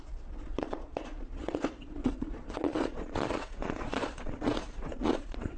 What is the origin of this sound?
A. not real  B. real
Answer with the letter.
A